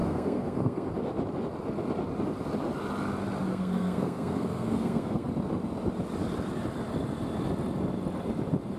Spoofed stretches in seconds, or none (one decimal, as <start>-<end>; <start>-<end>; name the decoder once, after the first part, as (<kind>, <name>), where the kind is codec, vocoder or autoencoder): 0.0-0.9 (codec, SNAC); 3.5-5.3